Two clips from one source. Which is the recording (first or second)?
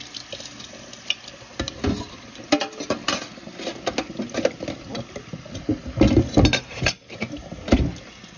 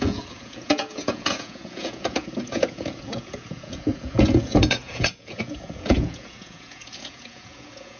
first